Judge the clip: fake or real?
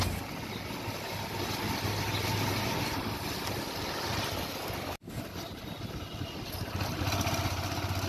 real